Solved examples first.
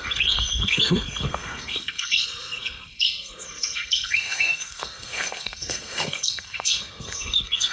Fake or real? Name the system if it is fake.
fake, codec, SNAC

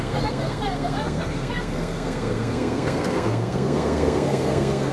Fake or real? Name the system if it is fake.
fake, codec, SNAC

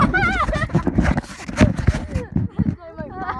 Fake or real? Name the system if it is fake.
real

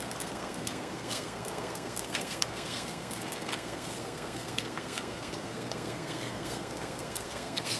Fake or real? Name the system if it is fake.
fake, codec, SNAC